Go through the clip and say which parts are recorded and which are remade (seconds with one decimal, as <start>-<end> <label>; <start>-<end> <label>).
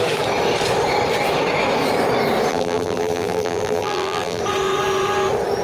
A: 0.0-2.5 recorded; 2.5-4.4 remade; 4.4-5.6 recorded